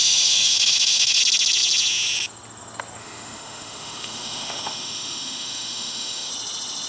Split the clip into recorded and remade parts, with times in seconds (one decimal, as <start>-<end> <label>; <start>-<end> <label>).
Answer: 0.0-1.2 remade; 1.2-3.0 recorded; 3.0-6.3 remade; 6.3-6.9 recorded